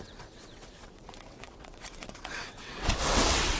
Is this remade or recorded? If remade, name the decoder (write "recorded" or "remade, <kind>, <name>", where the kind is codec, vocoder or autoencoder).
remade, vocoder, WaveNeXt